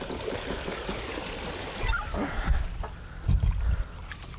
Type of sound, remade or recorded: recorded